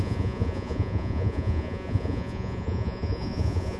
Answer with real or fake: fake